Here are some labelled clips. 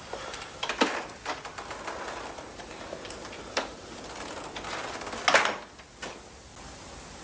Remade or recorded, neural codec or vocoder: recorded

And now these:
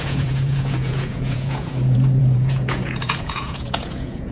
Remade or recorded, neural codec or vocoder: remade, vocoder, Vocos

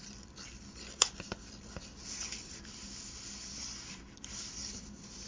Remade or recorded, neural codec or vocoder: remade, vocoder, BigVGAN v2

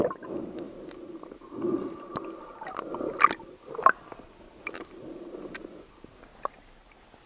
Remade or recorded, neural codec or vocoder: recorded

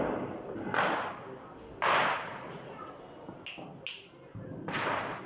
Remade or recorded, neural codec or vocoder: recorded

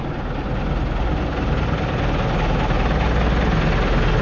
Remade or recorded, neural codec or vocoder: recorded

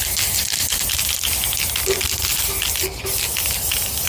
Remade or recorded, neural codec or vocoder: recorded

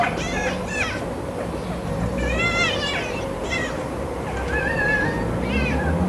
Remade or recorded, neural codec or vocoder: recorded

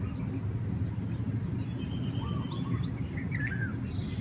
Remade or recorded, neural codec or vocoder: recorded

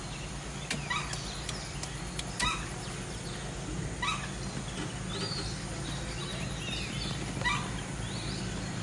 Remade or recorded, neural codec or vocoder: recorded